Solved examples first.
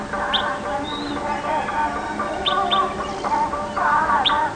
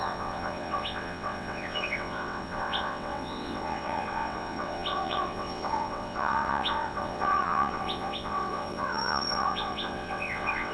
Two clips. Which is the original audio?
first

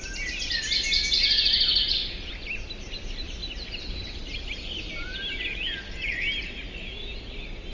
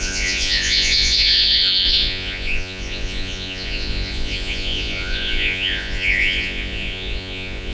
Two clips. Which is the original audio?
first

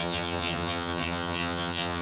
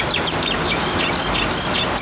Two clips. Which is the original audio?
second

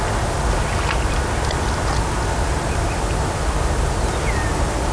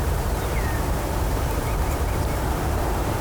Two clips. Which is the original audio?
first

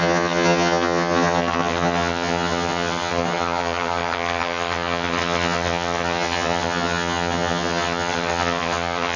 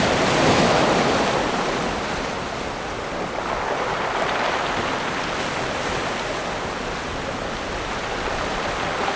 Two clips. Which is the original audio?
second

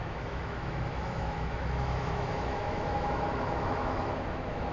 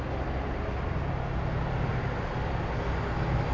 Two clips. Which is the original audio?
second